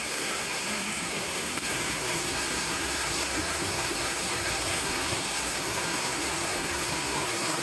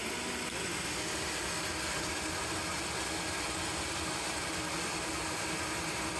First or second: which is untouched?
second